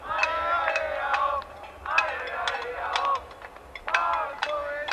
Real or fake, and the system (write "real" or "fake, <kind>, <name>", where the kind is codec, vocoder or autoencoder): real